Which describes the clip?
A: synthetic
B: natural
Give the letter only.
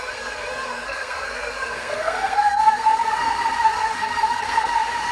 A